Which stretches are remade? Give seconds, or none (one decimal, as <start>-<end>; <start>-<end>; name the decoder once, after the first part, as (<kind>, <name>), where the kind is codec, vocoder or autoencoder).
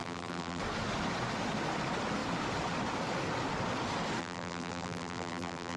0.0-0.6 (vocoder, BigVGAN v2); 4.2-5.8